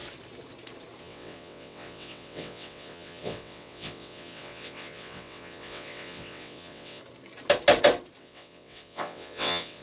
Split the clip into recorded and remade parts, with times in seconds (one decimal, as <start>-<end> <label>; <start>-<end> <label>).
0.0-1.0 recorded; 1.0-7.0 remade; 7.0-8.2 recorded; 8.2-9.8 remade